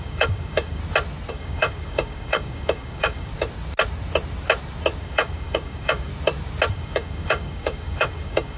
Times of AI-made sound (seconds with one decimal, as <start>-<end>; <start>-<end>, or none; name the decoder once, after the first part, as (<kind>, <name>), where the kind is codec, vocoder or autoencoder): 0.0-0.8 (codec, DAC); 1.3-3.3; 5.0-6.1; 6.7-8.6